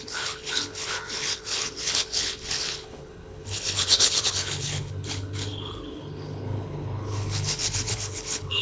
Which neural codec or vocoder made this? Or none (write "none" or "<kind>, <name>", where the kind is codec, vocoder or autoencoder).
codec, HILCodec